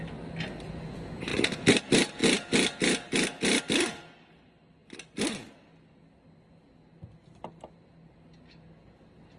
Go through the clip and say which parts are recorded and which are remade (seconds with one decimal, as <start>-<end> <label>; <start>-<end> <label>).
0.0-9.4 recorded